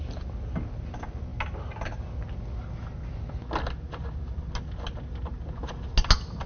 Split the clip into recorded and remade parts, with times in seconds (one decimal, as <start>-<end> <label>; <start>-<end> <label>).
0.0-6.5 recorded